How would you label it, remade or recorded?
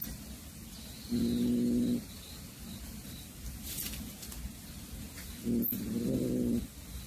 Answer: recorded